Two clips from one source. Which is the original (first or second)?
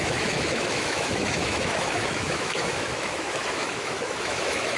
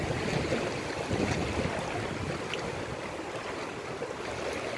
second